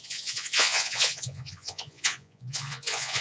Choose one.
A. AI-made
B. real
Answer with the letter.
A